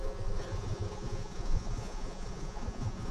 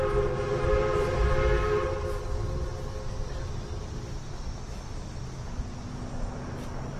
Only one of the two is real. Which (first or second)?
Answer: second